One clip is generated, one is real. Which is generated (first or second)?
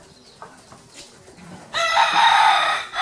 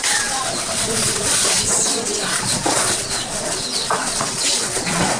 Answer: second